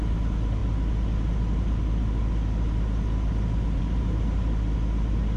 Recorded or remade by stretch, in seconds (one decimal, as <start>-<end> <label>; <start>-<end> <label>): 0.0-5.4 recorded